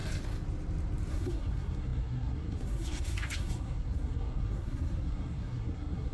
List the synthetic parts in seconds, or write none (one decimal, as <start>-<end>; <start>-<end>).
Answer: 1.1-6.1